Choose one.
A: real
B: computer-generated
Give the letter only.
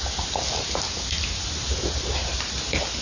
A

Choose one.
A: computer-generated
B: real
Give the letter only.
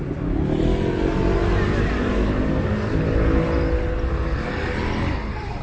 B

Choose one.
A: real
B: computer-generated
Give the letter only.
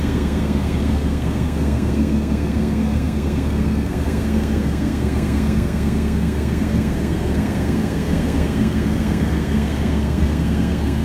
B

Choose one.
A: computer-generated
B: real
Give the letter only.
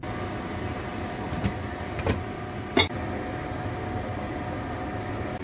B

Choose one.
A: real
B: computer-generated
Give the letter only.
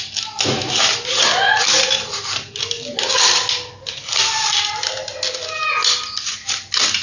A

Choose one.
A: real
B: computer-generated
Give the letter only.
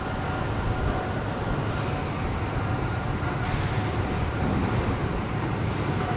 A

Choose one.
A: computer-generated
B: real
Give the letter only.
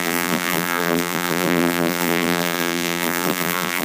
A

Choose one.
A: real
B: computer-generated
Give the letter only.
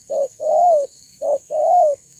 B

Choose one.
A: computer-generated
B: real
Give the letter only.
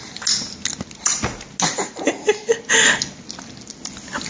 B